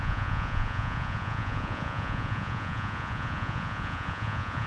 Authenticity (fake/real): fake